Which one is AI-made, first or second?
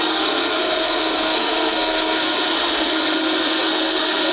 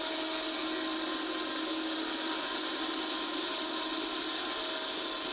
first